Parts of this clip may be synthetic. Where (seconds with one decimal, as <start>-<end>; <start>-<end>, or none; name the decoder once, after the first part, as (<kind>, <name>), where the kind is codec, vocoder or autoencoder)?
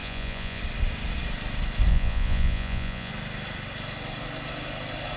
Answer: 0.0-0.6 (vocoder, Vocos); 1.9-3.1